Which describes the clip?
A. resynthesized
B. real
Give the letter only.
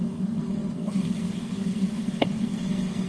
A